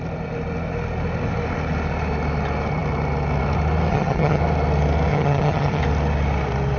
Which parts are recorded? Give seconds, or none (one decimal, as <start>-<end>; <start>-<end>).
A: 0.0-3.9; 4.4-5.1; 5.8-6.8